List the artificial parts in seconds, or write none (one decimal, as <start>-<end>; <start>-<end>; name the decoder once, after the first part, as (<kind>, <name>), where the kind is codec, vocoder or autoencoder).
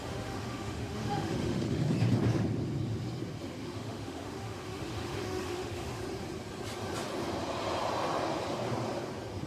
0.0-1.8 (autoencoder, DAC-VAE); 3.6-6.0